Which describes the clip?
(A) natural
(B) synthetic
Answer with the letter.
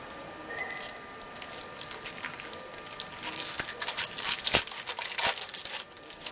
A